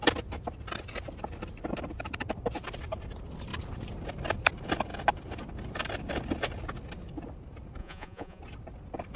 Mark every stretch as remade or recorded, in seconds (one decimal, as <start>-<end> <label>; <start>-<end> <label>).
0.0-7.8 recorded; 7.8-8.4 remade; 8.4-9.2 recorded